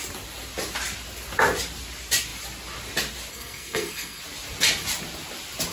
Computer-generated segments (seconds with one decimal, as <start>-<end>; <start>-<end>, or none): 3.3-4.2